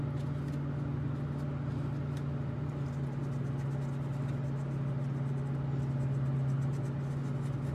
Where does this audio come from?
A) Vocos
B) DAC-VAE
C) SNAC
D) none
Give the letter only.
D